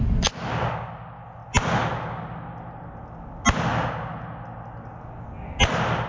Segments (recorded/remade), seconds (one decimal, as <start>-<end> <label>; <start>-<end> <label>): 0.0-6.1 recorded